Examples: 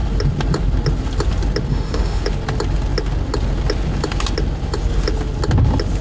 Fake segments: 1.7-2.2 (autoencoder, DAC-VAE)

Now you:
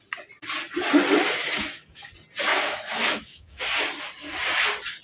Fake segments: 1.4-2.1 (autoencoder, DAC-VAE); 2.5-3.6

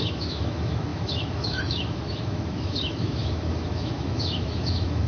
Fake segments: 0.0-5.1 (autoencoder, DAC-VAE)

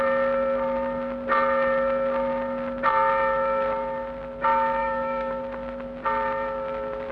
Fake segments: 4.8-5.4 (autoencoder, DAC-VAE)